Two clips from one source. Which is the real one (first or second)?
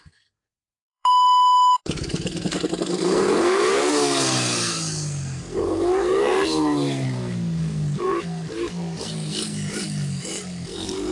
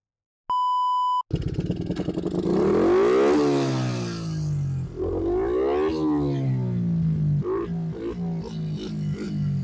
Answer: second